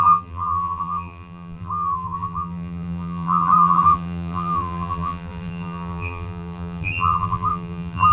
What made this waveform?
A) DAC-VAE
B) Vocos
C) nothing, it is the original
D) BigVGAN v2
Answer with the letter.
D